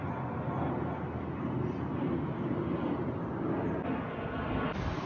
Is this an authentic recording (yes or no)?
yes